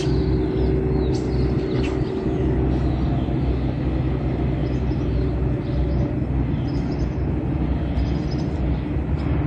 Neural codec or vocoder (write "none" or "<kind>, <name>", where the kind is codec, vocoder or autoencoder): none